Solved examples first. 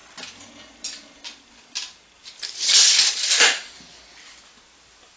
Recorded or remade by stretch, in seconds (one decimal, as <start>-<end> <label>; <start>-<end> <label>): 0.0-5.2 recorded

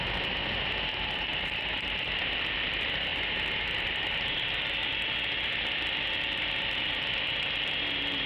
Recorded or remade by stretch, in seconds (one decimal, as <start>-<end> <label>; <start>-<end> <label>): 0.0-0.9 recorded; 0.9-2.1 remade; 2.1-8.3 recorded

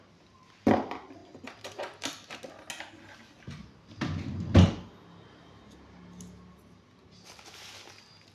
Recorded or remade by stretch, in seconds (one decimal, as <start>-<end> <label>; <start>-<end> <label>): 0.0-8.3 recorded

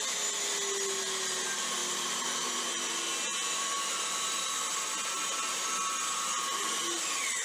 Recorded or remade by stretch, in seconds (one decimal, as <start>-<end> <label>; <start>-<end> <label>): 0.0-7.4 recorded

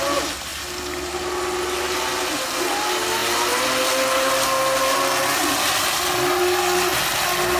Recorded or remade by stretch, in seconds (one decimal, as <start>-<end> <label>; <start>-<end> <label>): 0.0-7.6 recorded

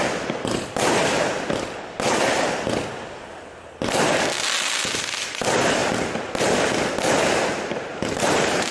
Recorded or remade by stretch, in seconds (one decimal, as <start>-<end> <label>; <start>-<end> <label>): 0.0-7.9 recorded; 7.9-8.7 remade

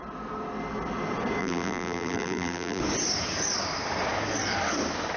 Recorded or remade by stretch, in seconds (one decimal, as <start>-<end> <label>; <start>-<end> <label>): 0.0-1.4 recorded; 1.4-2.8 remade; 2.8-5.2 recorded